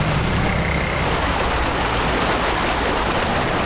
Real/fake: real